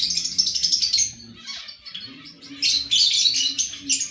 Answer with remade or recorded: recorded